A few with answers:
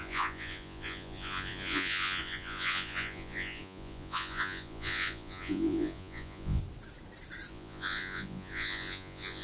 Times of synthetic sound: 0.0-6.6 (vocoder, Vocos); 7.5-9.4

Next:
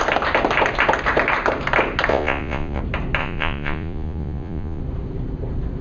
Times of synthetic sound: 2.1-2.8 (vocoder, Vocos); 3.2-4.8

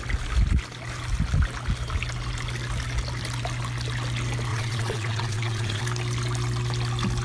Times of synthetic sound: 4.5-5.8 (vocoder, Vocos)